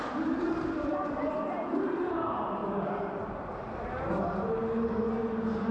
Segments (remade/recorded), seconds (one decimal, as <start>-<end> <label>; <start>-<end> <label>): 0.0-5.7 recorded